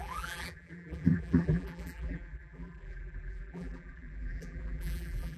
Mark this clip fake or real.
fake